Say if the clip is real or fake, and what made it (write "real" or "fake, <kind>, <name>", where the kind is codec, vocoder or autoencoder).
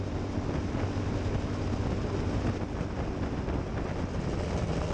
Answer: real